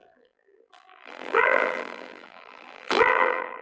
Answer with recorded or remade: remade